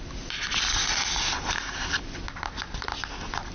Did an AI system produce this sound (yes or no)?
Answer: no